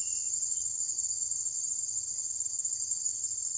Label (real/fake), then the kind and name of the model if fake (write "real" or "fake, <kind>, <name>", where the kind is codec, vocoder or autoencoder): fake, vocoder, HiFi-GAN